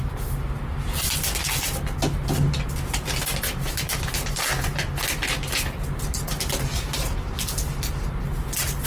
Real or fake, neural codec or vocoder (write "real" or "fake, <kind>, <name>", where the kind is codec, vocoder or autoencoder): real